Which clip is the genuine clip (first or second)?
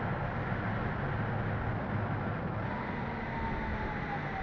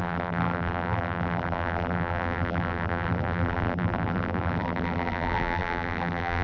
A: first